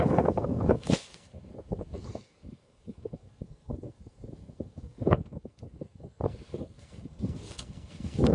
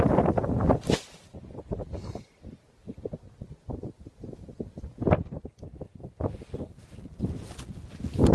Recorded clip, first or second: second